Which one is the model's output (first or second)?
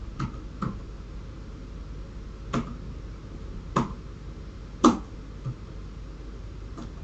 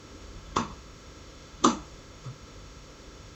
second